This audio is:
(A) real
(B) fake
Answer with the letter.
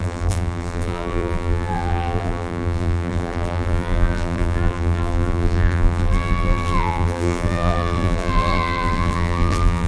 B